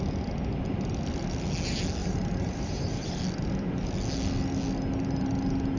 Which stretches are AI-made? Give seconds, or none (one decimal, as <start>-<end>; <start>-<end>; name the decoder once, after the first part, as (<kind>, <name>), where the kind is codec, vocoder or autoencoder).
2.0-3.2 (vocoder, BigVGAN v2)